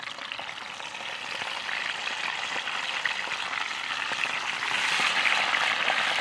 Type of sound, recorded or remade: recorded